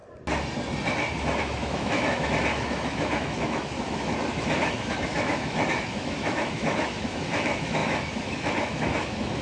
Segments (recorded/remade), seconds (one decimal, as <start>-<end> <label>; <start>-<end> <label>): 0.0-1.4 recorded; 1.4-9.4 remade